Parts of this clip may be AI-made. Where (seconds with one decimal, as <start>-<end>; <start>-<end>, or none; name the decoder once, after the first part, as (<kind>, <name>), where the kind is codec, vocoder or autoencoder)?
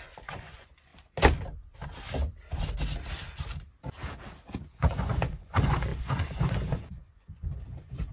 0.0-0.9 (vocoder, Vocos); 4.7-8.1